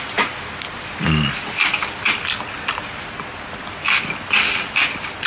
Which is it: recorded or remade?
recorded